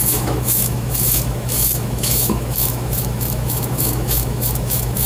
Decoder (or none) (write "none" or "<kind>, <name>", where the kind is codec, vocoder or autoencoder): autoencoder, DAC-VAE